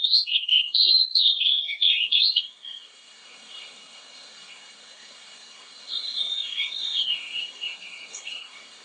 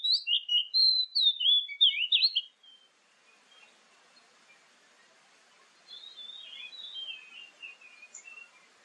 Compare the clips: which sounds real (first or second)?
second